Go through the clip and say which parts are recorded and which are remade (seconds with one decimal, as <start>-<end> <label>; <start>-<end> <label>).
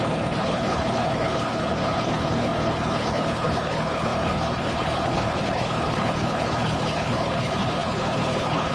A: 0.0-8.7 remade